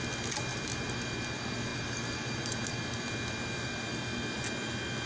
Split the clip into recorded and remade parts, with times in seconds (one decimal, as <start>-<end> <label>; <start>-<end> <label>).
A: 0.0-0.5 recorded; 0.5-1.0 remade; 1.0-1.7 recorded; 1.7-2.8 remade; 2.8-5.1 recorded

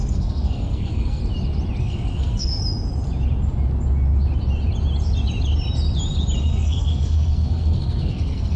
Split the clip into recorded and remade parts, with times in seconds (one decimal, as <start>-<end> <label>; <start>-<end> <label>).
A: 0.0-1.2 remade; 1.2-1.8 recorded; 1.8-2.6 remade; 2.6-6.4 recorded; 6.4-8.6 remade

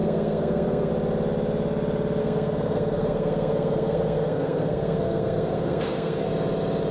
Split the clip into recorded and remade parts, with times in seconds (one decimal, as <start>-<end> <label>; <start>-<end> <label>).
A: 0.0-0.9 remade; 0.9-2.2 recorded; 2.2-6.3 remade; 6.3-6.9 recorded